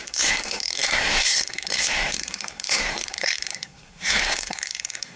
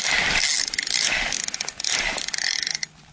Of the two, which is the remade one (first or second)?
first